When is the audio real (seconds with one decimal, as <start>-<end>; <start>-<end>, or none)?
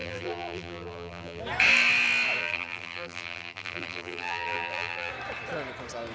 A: 1.4-2.4; 5.1-6.1